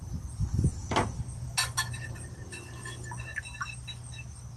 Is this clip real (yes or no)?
yes